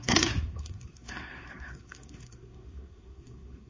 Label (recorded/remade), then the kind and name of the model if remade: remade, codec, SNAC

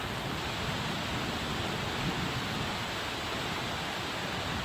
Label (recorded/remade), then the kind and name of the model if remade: recorded